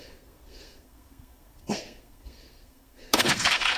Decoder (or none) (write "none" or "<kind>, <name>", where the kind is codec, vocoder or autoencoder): codec, SNAC